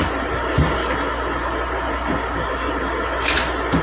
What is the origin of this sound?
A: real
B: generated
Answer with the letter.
B